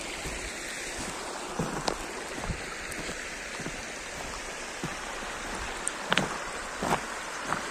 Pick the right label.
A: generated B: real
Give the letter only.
B